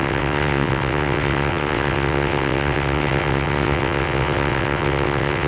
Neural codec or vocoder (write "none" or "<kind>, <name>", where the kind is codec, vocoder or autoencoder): vocoder, WaveNeXt